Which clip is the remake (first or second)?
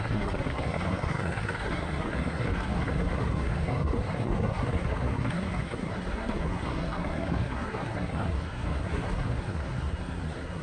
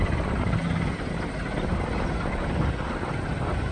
first